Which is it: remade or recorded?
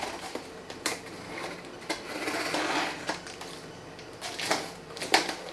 remade